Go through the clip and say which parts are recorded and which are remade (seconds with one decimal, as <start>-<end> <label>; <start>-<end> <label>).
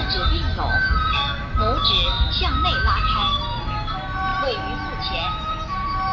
0.0-6.1 recorded